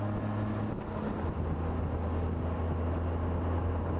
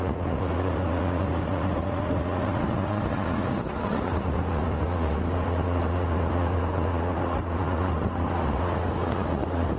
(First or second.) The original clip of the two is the first